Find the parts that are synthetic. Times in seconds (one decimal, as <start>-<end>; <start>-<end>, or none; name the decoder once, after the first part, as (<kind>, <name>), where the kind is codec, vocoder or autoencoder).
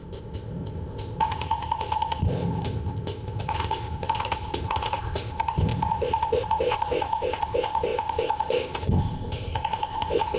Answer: 0.0-10.4 (codec, ZipCodec)